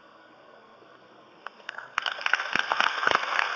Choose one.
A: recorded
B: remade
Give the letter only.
B